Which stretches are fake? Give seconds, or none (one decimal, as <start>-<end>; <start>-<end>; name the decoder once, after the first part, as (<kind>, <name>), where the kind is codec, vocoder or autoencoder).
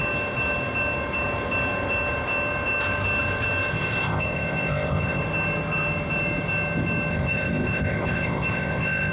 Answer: 3.7-5.2 (codec, ZipCodec); 7.1-9.1